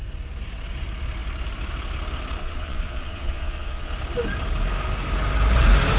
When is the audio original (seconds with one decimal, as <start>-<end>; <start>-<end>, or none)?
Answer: 0.0-2.4; 3.9-6.0